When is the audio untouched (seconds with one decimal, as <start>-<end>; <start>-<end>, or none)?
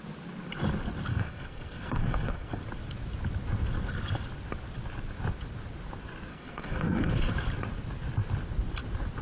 0.0-1.1; 2.6-6.3; 7.1-9.2